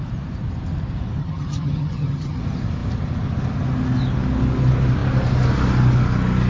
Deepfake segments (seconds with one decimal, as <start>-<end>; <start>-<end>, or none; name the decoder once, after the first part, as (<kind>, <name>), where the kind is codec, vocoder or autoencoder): 1.2-2.4 (vocoder, HiFi-GAN)